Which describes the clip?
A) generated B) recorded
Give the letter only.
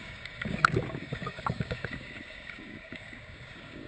A